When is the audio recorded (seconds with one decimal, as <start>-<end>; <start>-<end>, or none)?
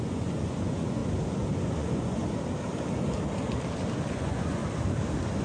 1.0-1.6; 2.2-4.1; 4.6-5.4